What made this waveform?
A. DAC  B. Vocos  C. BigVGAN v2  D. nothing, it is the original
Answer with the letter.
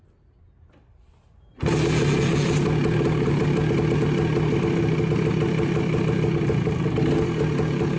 D